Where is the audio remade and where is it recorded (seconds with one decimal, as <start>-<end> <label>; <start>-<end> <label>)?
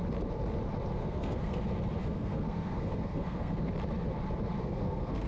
0.0-1.0 recorded; 1.0-1.6 remade; 1.6-2.0 recorded; 2.0-3.7 remade; 3.7-4.6 recorded; 4.6-5.3 remade